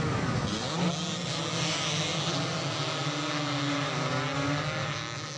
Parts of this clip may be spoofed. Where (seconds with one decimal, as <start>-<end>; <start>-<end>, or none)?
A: none